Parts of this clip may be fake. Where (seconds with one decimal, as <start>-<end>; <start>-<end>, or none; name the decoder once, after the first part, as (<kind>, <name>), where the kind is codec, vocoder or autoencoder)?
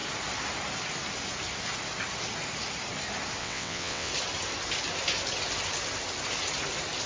3.4-4.1 (vocoder, WaveNeXt)